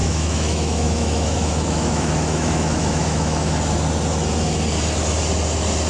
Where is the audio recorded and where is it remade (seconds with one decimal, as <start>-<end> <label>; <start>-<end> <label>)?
0.0-3.5 remade; 3.5-5.9 recorded